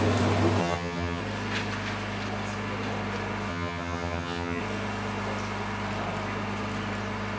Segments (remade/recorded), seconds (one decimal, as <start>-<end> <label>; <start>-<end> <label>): 0.0-0.6 recorded; 0.6-1.2 remade; 1.2-3.5 recorded; 3.5-4.6 remade; 4.6-7.4 recorded